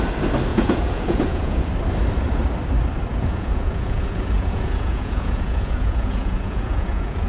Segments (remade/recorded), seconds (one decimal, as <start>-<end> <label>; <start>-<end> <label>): 0.0-0.5 recorded; 0.5-1.7 remade; 1.7-3.1 recorded; 3.1-7.3 remade